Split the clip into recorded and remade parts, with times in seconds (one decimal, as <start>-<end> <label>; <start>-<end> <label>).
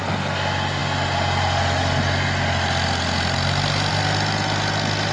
0.0-5.1 recorded